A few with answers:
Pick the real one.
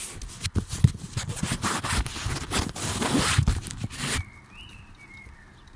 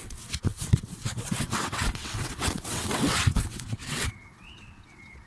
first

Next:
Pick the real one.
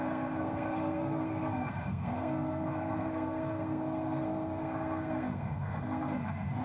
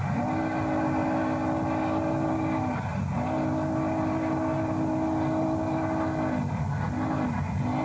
second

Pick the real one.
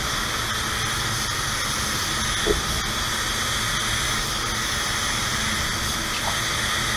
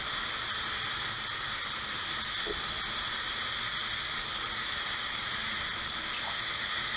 first